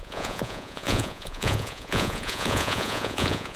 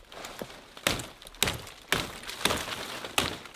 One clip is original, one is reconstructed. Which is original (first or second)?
second